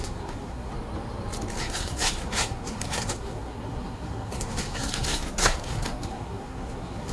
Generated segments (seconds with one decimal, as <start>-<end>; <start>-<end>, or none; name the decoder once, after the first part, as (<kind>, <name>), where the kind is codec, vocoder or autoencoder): 0.0-0.7 (codec, SNAC); 1.6-7.1